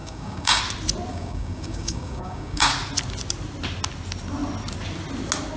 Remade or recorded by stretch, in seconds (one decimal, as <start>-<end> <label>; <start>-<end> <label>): 0.0-0.6 remade; 0.6-1.1 recorded; 1.1-2.7 remade; 2.7-5.6 recorded